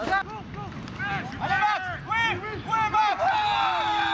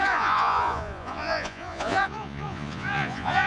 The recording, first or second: first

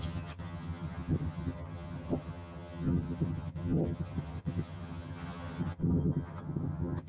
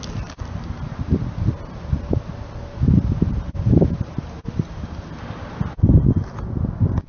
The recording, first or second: second